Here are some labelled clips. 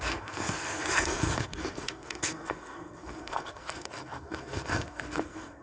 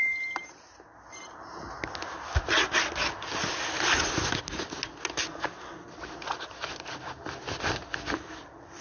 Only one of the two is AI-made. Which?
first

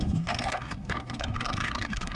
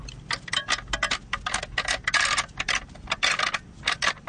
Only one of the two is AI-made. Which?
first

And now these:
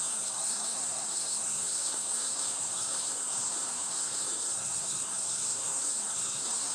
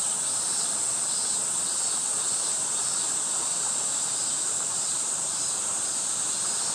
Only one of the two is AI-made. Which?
first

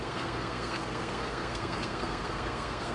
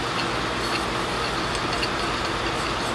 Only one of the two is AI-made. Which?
first